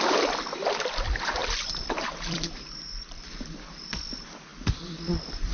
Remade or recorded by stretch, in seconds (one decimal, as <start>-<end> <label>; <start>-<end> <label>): 0.0-1.4 recorded; 1.4-3.9 remade; 3.9-4.5 recorded; 4.5-5.5 remade